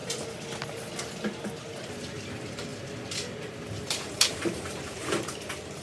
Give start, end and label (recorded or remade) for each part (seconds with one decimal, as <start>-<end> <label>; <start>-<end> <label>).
0.0-1.6 recorded; 1.6-5.8 remade